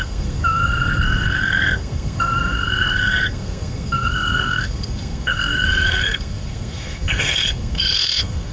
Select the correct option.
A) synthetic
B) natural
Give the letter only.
A